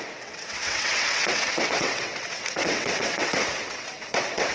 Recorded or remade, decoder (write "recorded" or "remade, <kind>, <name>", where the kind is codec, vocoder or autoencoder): remade, vocoder, WaveNeXt